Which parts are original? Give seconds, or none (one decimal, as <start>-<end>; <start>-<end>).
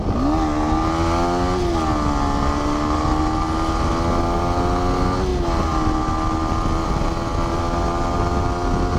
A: 0.0-9.0